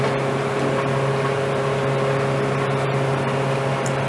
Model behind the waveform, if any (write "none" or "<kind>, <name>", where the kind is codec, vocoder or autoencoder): none